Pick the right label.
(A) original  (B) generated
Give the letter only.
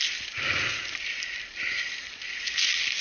A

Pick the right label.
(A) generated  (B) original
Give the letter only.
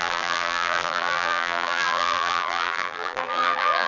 A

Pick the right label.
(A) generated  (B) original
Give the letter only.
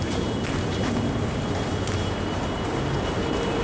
B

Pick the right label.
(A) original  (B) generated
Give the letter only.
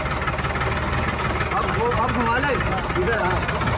A